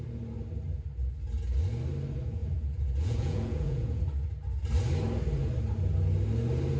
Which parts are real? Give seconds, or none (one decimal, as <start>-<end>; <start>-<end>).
0.0-2.4; 4.0-6.8